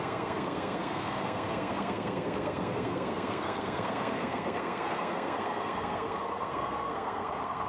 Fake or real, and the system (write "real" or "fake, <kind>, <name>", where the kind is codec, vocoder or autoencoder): fake, codec, SNAC